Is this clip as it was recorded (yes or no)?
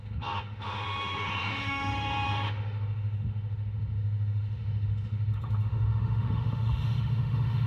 no